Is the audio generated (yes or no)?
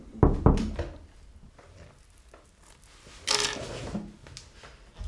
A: no